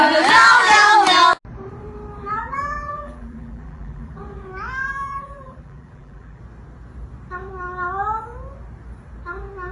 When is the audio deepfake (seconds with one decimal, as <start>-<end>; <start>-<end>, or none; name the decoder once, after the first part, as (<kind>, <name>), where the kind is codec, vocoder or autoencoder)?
2.2-4.2 (vocoder, BigVGAN v2); 4.8-6.4